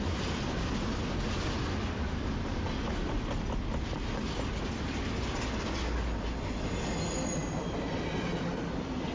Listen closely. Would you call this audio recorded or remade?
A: recorded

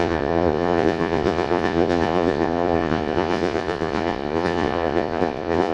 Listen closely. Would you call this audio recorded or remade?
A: remade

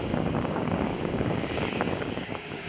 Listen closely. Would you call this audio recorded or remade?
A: remade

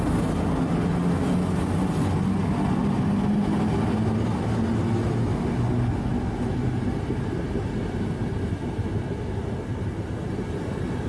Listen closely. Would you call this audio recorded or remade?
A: recorded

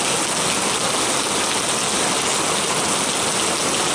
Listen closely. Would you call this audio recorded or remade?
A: recorded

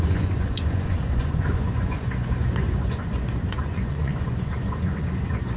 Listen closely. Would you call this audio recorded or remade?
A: remade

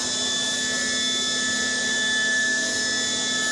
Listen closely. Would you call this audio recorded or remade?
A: recorded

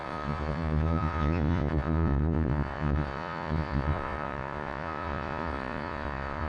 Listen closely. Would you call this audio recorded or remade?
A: remade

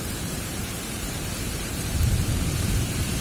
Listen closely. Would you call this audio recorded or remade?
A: remade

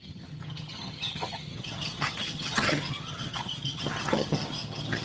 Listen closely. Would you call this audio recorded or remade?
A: remade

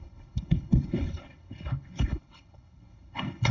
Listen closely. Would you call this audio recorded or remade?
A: remade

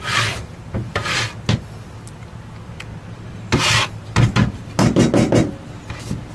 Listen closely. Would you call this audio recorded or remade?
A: recorded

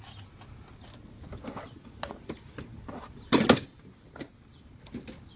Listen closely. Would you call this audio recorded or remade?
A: recorded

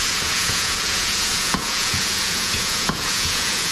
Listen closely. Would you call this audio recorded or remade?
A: remade